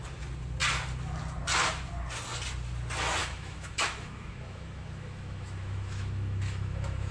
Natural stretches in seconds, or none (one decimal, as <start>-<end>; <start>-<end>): 0.0-3.2